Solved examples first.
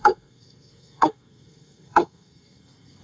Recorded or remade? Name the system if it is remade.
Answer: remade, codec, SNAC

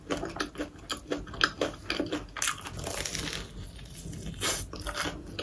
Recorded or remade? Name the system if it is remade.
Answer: recorded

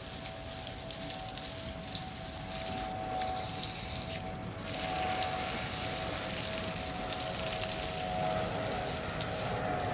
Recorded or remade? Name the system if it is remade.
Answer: recorded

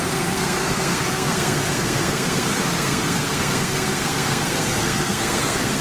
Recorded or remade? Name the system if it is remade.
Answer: remade, codec, SNAC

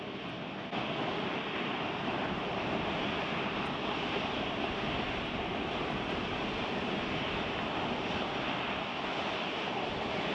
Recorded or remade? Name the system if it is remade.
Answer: recorded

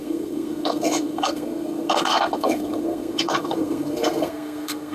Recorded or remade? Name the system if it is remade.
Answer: remade, codec, SNAC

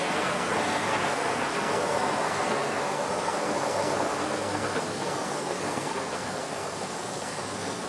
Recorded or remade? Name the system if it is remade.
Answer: remade, codec, SNAC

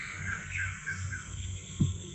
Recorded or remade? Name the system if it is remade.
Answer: remade, codec, SNAC